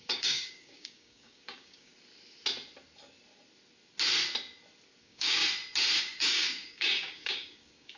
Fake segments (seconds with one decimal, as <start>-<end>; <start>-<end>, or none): 0.0-1.9; 5.0-5.4; 6.0-8.0